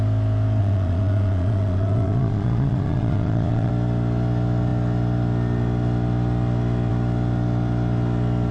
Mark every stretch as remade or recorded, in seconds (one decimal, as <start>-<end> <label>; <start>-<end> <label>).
0.0-0.6 recorded; 0.6-3.7 remade; 3.7-8.5 recorded